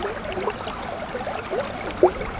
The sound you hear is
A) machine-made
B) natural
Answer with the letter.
B